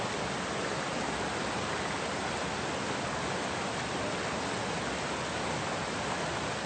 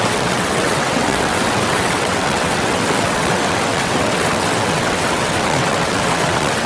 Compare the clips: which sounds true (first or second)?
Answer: first